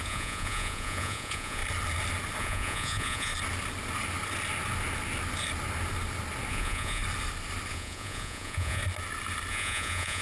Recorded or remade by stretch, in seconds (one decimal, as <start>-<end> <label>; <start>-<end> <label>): 0.0-1.6 remade; 1.6-2.4 recorded; 2.4-3.3 remade; 3.3-6.5 recorded; 6.5-7.0 remade; 7.0-7.7 recorded; 7.7-8.8 remade; 8.8-9.5 recorded; 9.5-10.2 remade